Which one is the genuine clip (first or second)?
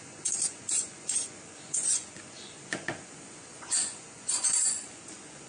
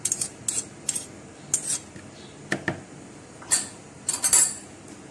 second